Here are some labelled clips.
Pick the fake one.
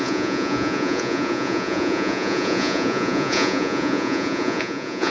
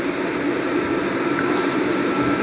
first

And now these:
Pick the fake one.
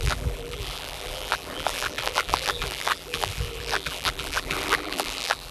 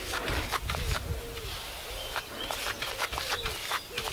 first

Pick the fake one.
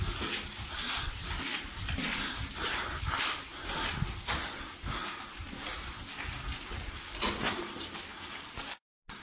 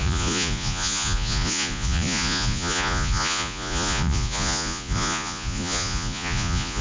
second